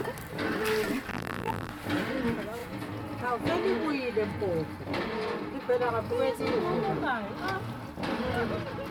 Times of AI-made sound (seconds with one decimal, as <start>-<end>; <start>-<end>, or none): 1.1-1.7